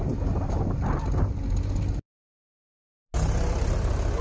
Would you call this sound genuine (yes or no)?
yes